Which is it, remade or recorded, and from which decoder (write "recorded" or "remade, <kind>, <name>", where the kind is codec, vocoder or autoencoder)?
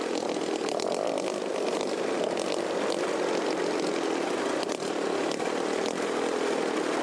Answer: recorded